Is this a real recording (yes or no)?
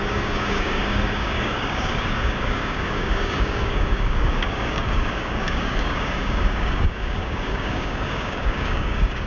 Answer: no